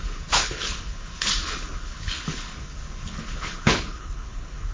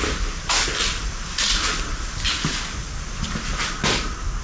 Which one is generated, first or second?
first